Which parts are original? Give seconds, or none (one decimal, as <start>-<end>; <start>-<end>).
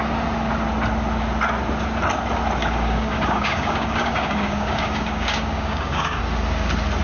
0.0-2.6; 6.2-7.0